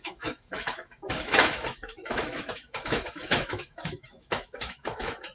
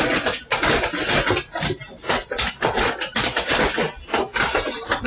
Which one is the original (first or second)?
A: second